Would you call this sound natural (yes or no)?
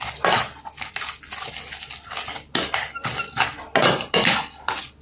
yes